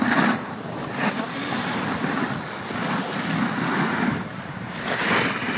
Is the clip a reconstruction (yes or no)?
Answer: no